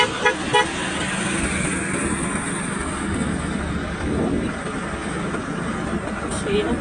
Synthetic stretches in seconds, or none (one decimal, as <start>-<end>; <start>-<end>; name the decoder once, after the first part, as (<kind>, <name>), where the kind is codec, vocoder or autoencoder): none